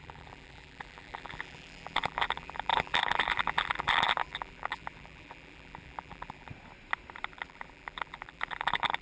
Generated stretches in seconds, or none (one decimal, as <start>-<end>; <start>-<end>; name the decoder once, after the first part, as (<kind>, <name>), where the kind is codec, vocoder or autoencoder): 0.0-6.5 (vocoder, BigVGAN v2); 7.3-9.0